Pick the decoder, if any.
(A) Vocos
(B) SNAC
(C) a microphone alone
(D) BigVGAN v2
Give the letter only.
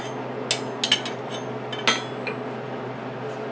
C